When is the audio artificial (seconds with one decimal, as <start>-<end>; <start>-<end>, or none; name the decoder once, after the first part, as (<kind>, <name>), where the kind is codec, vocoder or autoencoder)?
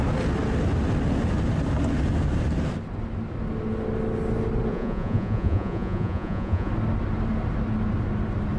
4.7-6.7 (vocoder, Vocos)